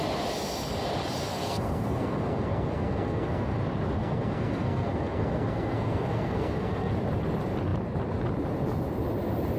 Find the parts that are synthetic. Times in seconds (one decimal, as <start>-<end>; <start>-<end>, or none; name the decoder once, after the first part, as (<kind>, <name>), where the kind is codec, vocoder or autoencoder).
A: 1.3-3.6 (codec, SNAC); 4.0-6.9